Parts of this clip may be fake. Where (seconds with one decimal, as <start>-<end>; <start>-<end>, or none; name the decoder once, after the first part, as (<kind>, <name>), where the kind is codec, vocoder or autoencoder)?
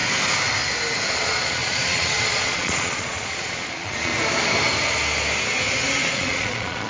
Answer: 1.1-4.1 (vocoder, Vocos); 6.0-6.9